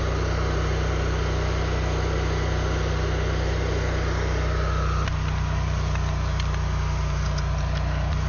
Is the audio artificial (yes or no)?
no